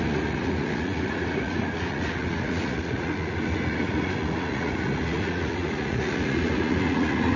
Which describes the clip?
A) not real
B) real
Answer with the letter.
A